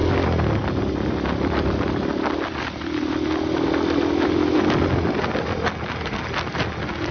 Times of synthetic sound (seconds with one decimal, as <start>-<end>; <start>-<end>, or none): none